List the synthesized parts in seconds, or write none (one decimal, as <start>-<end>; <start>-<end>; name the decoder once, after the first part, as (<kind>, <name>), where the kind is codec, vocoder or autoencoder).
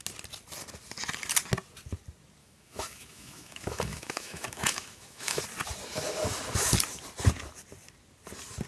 2.4-5.4 (autoencoder, DAC-VAE)